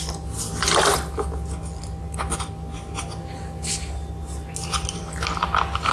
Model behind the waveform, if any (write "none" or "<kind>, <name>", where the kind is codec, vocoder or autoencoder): none